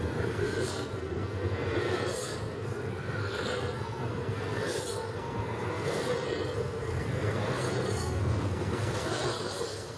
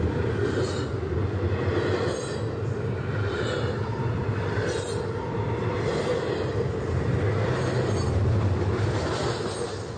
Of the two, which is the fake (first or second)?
first